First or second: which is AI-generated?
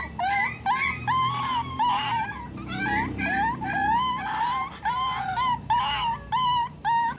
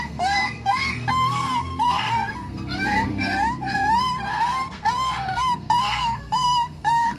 second